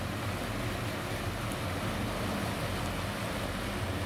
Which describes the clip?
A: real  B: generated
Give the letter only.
A